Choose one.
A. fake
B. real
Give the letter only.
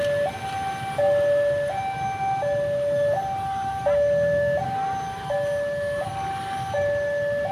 B